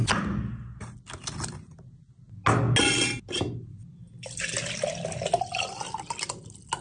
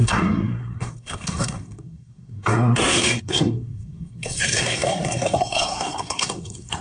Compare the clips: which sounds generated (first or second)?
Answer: second